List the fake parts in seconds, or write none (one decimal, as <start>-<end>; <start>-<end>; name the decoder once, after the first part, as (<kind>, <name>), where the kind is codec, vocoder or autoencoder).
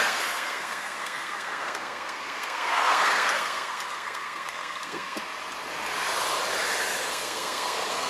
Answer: 0.0-5.2 (codec, SNAC); 7.1-8.1